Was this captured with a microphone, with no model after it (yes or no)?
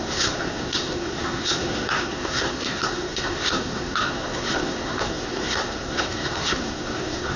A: no